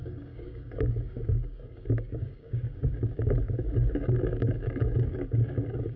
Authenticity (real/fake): fake